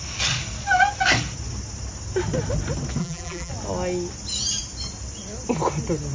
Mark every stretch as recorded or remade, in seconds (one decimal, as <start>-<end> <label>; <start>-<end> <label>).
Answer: 0.0-3.0 recorded; 3.0-3.5 remade; 3.5-6.1 recorded